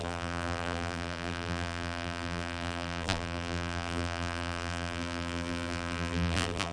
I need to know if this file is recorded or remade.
remade